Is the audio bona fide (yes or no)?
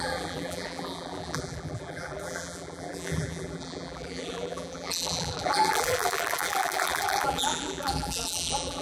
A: no